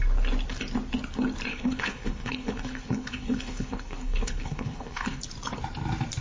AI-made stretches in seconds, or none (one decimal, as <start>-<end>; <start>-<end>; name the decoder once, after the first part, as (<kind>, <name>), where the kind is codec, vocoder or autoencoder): 1.5-5.2 (codec, HILCodec)